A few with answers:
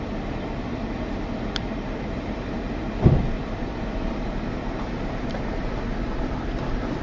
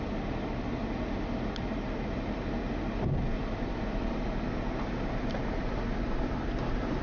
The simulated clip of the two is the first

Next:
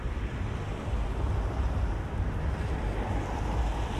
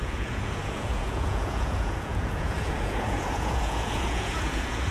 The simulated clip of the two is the second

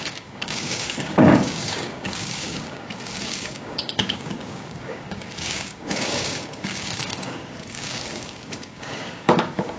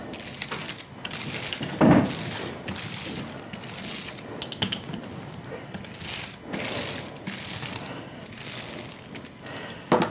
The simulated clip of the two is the first